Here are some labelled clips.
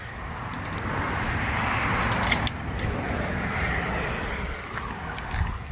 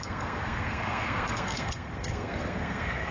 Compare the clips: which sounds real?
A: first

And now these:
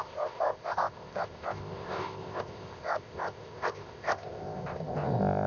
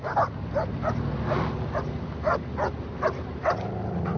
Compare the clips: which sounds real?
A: second